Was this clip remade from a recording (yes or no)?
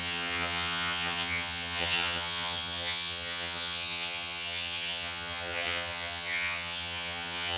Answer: yes